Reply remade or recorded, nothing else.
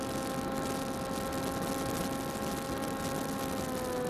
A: recorded